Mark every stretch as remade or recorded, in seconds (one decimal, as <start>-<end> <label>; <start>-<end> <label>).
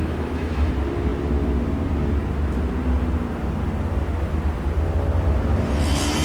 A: 0.0-0.7 remade; 0.7-6.2 recorded